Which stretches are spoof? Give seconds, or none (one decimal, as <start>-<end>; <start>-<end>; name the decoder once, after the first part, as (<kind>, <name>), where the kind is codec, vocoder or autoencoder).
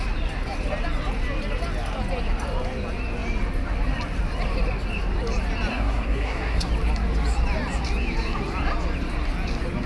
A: 5.7-6.7 (codec, SNAC)